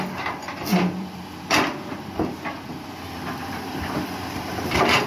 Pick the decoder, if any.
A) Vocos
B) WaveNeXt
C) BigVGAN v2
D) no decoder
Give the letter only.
C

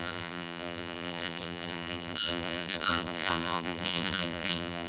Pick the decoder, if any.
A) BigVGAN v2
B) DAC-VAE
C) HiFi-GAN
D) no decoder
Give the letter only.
A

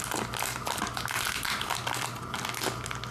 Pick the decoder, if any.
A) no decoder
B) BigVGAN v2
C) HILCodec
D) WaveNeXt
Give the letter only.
A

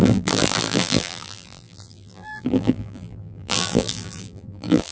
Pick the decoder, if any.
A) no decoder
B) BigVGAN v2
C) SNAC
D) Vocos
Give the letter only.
B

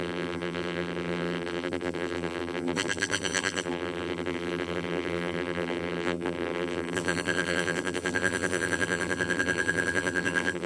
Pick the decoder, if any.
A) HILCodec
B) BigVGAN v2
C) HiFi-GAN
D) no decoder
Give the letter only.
B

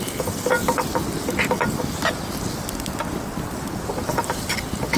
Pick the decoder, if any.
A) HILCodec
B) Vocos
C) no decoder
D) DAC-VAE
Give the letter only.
C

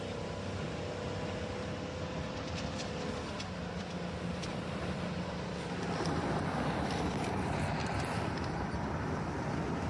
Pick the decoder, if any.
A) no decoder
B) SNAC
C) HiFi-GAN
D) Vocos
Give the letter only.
A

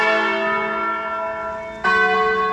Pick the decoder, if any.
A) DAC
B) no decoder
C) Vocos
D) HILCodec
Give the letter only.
B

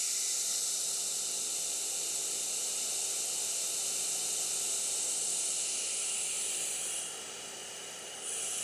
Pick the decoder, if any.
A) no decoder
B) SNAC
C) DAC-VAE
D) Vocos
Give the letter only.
A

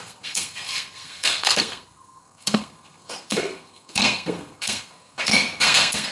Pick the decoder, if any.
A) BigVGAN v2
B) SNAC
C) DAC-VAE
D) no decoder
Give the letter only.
B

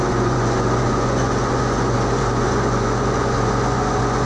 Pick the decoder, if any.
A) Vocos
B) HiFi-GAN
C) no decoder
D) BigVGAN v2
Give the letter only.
A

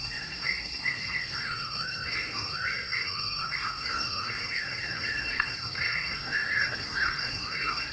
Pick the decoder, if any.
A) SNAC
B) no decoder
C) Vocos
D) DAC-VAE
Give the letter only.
A